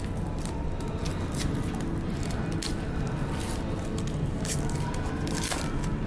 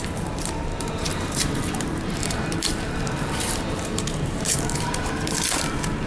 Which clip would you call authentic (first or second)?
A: first